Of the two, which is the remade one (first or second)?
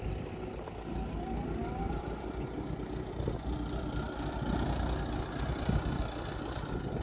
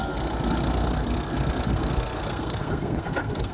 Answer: second